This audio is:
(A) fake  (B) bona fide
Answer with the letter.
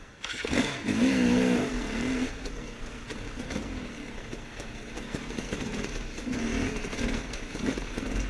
A